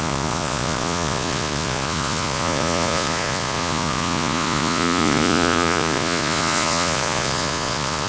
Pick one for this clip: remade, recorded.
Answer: remade